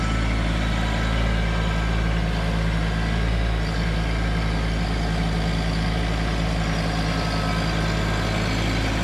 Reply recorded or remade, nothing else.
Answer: recorded